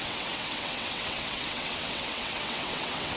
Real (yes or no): no